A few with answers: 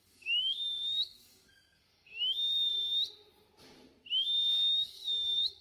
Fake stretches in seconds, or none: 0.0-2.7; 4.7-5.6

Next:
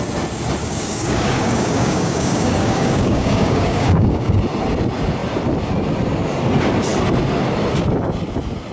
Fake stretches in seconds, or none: 0.6-4.4

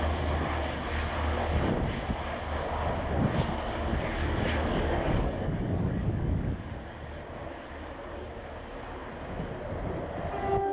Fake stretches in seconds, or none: 3.9-6.7

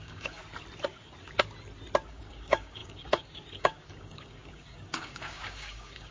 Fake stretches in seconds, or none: 0.0-0.4; 2.1-6.1